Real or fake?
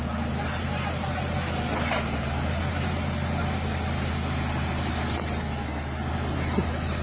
real